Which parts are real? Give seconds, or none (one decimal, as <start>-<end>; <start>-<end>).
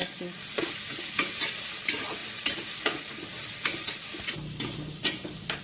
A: 0.7-5.6